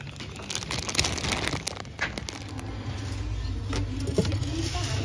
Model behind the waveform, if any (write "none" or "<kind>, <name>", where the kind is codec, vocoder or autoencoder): none